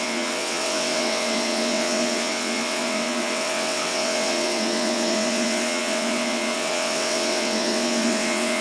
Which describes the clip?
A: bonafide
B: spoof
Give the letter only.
B